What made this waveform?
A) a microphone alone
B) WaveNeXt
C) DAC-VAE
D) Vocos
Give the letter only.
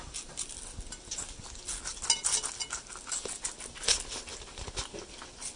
A